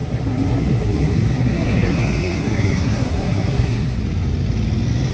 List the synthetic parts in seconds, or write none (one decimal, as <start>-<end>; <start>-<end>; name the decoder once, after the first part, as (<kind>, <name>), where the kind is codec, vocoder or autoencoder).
0.0-4.0 (codec, SNAC)